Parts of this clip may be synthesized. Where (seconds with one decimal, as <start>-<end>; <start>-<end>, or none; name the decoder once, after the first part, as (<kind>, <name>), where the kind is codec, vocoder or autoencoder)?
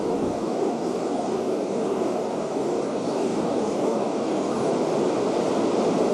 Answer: 0.0-4.7 (codec, DAC)